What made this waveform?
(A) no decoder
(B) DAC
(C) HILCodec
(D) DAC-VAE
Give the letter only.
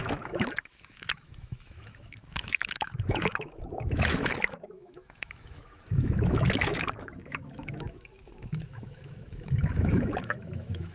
D